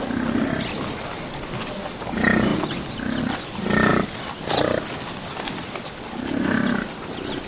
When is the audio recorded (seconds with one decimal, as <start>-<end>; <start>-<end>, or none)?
2.5-3.2; 3.9-4.4